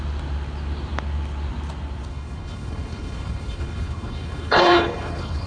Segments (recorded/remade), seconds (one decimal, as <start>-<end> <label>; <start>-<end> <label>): 0.0-2.1 recorded; 2.1-5.5 remade